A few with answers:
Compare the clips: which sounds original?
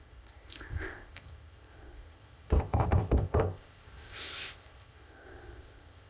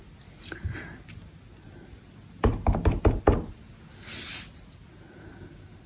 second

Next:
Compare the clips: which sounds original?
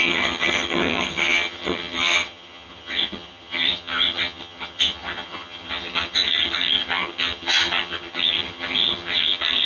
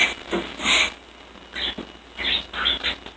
second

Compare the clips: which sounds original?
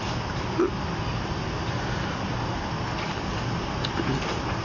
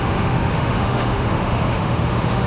first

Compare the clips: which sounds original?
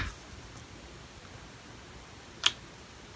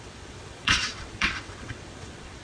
first